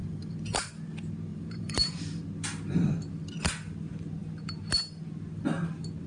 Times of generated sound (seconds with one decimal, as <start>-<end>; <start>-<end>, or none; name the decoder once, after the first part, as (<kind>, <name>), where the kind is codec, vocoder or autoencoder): 0.0-0.7 (vocoder, BigVGAN v2); 1.3-2.2